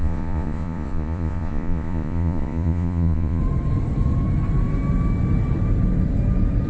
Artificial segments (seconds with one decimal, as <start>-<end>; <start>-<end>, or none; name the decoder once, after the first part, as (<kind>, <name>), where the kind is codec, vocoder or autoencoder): 0.0-3.4 (vocoder, Vocos)